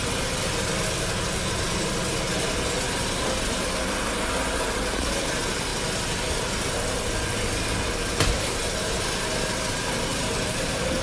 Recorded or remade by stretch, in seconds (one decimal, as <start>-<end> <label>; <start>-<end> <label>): 0.0-10.1 recorded; 10.1-11.0 remade